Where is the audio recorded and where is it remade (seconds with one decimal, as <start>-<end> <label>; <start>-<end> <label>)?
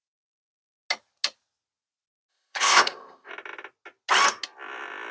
0.0-2.3 recorded; 2.3-3.3 remade; 3.3-5.1 recorded